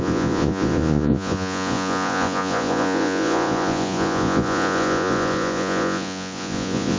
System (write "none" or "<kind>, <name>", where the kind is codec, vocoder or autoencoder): vocoder, Vocos